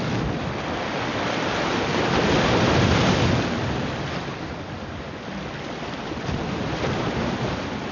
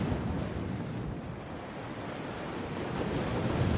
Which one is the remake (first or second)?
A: first